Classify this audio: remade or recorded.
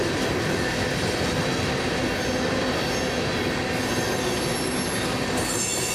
recorded